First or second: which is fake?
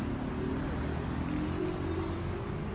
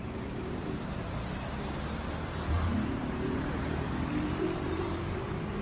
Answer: second